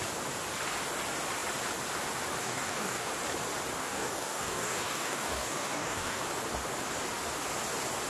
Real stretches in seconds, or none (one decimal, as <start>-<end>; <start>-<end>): 0.0-2.4; 3.1-3.8; 6.2-8.1